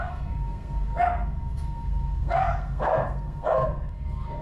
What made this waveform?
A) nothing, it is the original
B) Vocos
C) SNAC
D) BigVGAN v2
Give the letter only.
C